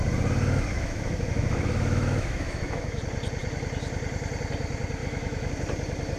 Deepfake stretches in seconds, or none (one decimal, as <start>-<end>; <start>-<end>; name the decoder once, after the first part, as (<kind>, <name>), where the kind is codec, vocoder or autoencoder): 0.7-3.0 (autoencoder, DAC-VAE); 5.0-5.5